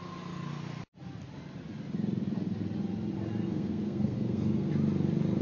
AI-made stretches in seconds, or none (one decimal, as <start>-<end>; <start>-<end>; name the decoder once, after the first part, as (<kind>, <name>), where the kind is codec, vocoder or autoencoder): 3.4-4.7 (codec, SNAC)